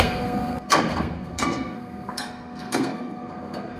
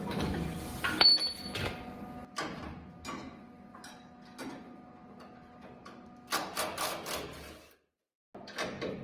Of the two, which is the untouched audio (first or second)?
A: second